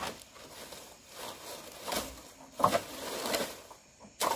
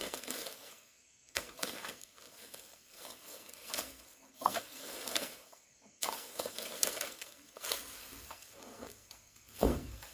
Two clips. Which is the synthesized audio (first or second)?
second